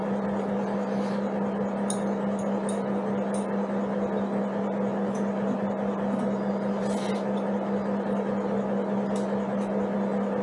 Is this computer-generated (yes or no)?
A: no